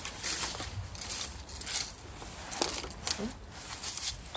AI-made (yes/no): no